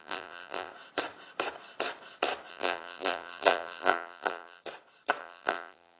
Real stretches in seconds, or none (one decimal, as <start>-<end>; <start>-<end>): 0.7-2.5; 4.6-5.2